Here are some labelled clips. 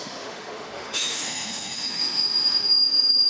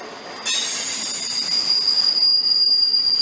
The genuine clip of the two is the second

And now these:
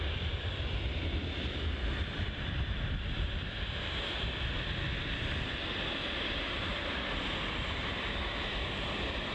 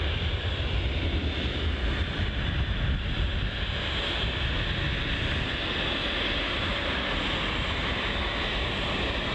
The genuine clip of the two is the second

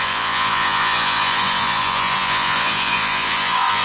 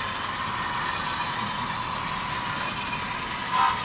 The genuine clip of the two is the second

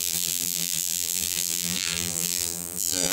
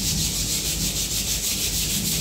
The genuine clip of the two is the second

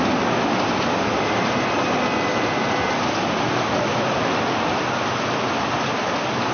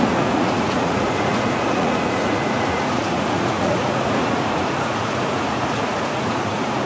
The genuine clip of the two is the first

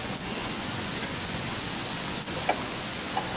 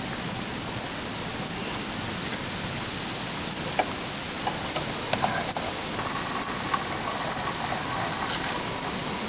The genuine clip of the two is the second